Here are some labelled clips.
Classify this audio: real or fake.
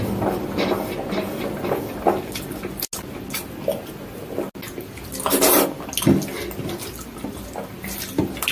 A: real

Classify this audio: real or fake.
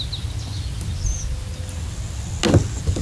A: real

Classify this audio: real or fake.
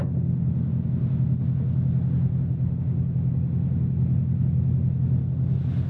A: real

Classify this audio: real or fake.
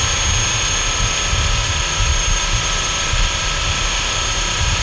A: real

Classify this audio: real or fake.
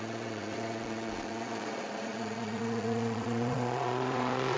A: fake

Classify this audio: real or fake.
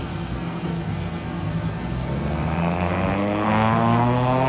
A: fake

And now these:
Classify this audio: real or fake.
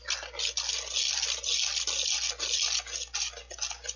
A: real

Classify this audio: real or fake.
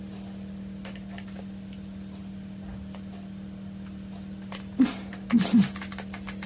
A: real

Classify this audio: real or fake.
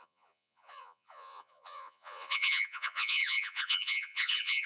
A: fake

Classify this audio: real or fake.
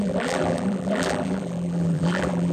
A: fake